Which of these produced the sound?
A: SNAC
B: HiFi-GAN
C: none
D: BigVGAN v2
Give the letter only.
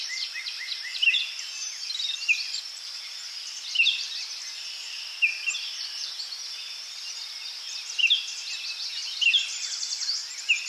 D